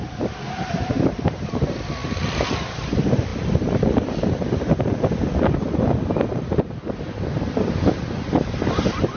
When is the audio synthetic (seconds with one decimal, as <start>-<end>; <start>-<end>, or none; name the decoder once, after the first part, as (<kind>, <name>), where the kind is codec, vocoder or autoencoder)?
none

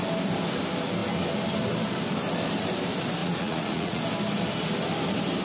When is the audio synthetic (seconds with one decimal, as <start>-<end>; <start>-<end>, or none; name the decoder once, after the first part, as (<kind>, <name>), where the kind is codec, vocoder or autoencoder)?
3.2-4.0 (vocoder, Vocos)

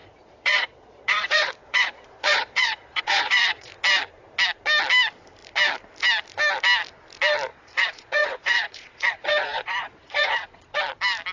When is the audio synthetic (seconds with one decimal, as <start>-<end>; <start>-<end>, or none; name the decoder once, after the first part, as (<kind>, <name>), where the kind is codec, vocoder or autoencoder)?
0.0-3.7 (vocoder, Vocos); 7.5-10.8

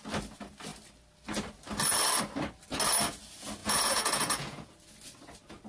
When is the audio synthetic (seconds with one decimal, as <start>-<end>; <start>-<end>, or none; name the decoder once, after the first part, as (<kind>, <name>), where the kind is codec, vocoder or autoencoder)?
3.6-4.7 (vocoder, Vocos)

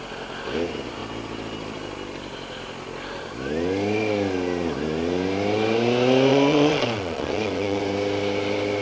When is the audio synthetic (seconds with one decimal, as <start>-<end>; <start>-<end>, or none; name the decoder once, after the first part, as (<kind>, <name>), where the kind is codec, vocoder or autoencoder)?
6.3-7.8 (vocoder, Vocos)

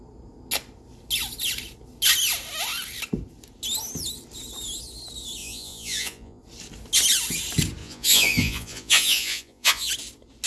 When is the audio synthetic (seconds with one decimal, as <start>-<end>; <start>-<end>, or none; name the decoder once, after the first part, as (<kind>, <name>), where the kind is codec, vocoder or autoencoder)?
5.4-6.4 (vocoder, Vocos); 7.8-9.9

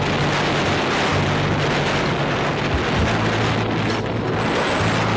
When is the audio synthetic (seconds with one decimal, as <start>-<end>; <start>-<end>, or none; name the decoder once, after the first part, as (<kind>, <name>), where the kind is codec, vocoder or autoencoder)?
none